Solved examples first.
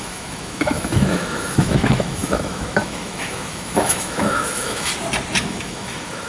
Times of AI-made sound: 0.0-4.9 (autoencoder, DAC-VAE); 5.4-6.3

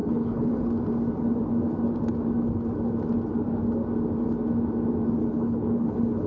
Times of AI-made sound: 0.0-0.5 (codec, HILCodec); 5.2-6.3

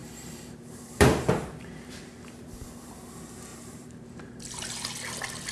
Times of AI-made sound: 0.0-2.0 (vocoder, BigVGAN v2); 3.5-4.4

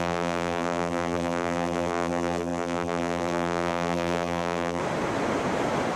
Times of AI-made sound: 0.0-4.8 (vocoder, BigVGAN v2)

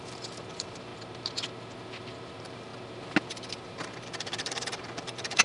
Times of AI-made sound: 0.0-0.9 (vocoder, BigVGAN v2); 2.3-2.7; 3.6-5.4

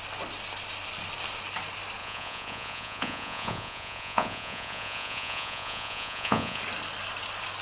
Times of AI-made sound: 2.0-6.6 (vocoder, Vocos)

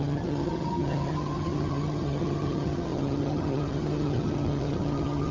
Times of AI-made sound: 0.0-5.3 (vocoder, HiFi-GAN)

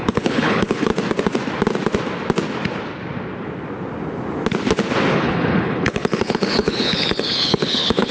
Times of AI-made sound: 0.0-0.9 (codec, HILCodec); 5.1-8.1